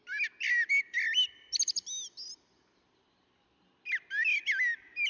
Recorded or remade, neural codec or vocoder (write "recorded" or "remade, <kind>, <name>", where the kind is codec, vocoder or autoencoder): recorded